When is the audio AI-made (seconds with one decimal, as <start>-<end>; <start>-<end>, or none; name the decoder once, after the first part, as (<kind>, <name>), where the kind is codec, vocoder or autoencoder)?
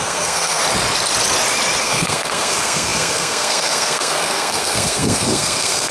0.0-0.6 (codec, SNAC); 1.8-5.9